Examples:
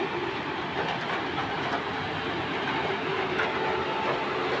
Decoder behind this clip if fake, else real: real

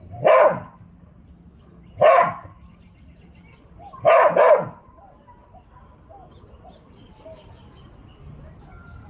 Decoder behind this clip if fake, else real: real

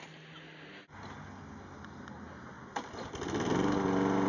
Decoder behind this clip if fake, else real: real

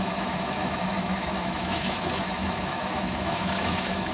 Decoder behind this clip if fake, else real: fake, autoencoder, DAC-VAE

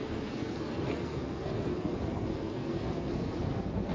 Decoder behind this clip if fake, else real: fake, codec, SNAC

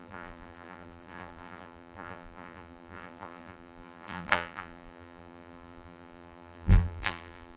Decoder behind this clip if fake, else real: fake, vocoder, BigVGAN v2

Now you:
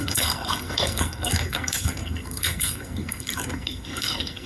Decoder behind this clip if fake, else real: fake, codec, SNAC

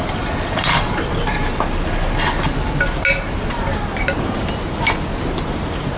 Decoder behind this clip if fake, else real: real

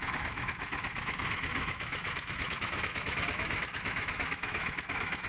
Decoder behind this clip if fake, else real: fake, autoencoder, DAC-VAE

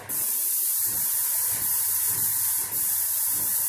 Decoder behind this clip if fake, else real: real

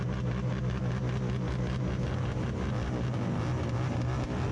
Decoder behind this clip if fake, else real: real